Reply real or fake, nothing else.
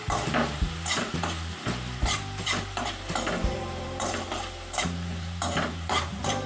fake